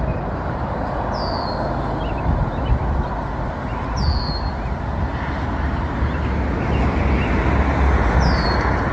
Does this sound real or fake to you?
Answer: real